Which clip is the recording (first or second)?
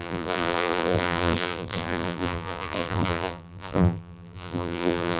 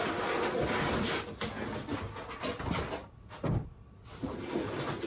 second